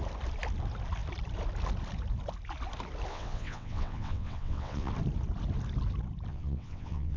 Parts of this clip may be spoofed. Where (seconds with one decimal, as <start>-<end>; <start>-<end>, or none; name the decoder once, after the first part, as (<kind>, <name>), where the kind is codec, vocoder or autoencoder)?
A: 3.1-4.9 (vocoder, WaveNeXt); 6.3-7.2